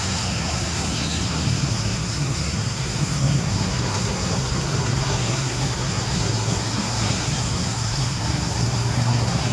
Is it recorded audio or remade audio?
remade